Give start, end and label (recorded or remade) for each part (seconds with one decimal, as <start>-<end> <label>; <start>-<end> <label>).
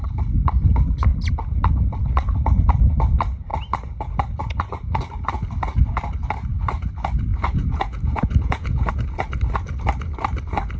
0.0-7.3 recorded; 7.3-8.9 remade; 8.9-10.8 recorded